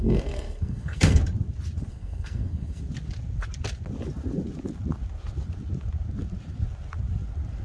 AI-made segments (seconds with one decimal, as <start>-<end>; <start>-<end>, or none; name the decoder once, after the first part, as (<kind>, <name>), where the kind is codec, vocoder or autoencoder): 0.0-1.2 (codec, SNAC); 1.9-2.8